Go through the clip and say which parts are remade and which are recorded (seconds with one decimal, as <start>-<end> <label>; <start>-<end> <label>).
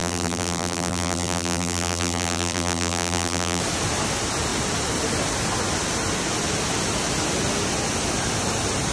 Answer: 0.0-3.6 remade; 3.6-8.9 recorded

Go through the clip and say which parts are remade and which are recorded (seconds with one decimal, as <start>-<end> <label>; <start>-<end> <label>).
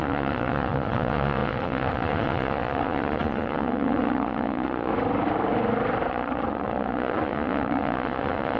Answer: 0.0-4.9 remade; 4.9-6.1 recorded; 6.1-8.6 remade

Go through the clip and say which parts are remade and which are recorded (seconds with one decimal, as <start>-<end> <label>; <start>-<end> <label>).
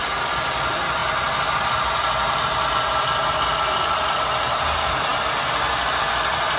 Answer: 0.0-6.6 recorded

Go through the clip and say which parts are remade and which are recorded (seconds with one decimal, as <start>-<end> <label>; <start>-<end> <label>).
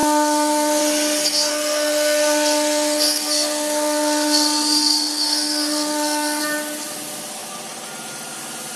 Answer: 0.0-0.8 remade; 0.8-1.5 recorded; 1.5-6.4 remade; 6.4-8.8 recorded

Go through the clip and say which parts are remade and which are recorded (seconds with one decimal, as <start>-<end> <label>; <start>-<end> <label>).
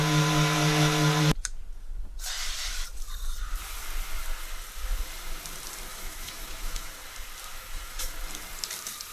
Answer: 0.0-5.9 recorded; 5.9-6.9 remade; 6.9-7.5 recorded; 7.5-8.2 remade; 8.2-9.1 recorded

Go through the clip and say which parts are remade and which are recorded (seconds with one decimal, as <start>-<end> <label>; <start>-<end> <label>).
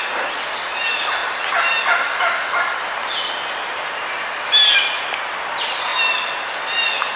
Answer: 0.0-1.2 recorded; 1.2-2.3 remade; 2.3-7.2 recorded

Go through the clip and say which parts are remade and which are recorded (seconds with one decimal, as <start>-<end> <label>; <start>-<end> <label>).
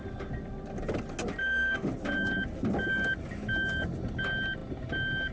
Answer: 0.0-1.4 recorded; 1.4-1.9 remade; 1.9-5.3 recorded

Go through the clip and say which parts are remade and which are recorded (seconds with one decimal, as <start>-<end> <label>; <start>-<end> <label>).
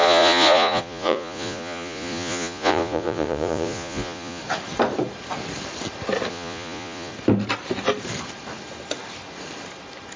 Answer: 0.0-4.4 remade; 4.4-6.3 recorded; 6.3-7.1 remade; 7.1-10.2 recorded